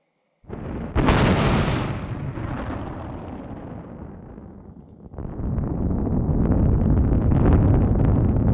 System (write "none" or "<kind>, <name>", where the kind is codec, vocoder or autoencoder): none